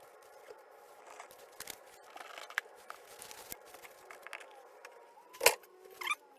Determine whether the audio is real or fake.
real